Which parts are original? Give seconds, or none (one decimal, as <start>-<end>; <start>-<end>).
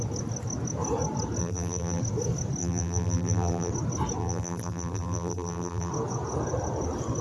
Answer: 0.0-1.4; 2.0-2.6; 3.7-4.2; 5.9-7.2